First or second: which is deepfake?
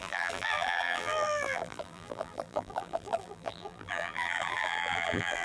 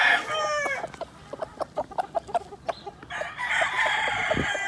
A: first